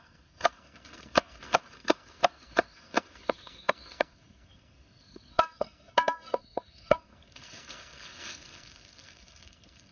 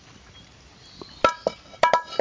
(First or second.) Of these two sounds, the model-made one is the first